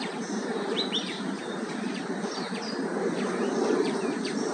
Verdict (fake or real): fake